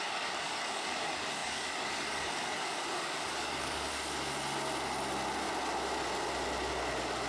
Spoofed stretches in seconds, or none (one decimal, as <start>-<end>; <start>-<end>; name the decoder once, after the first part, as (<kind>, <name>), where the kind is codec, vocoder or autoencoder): 0.0-3.9 (codec, DAC)